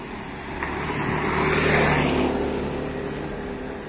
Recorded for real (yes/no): yes